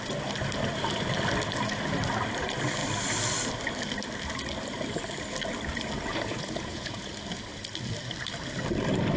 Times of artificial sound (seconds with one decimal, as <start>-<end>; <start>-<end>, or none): 6.1-7.1